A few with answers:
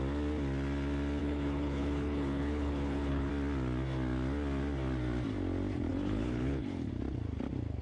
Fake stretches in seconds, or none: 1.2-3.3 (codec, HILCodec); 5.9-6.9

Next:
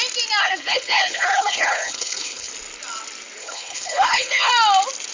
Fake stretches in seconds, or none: 0.4-2.5 (codec, HILCodec); 3.4-4.5

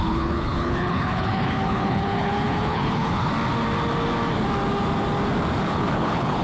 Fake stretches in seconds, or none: 0.0-3.3 (codec, HILCodec); 5.6-6.4

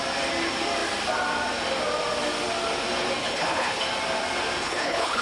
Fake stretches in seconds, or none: 3.2-3.8 (codec, HILCodec); 4.6-5.2

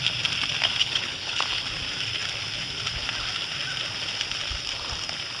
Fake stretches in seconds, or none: 0.8-1.4 (codec, HILCodec)

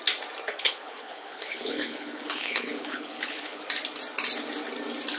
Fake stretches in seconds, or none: 0.5-3.6 (codec, HILCodec)